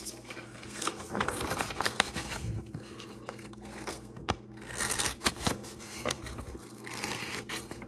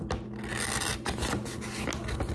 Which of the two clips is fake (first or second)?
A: first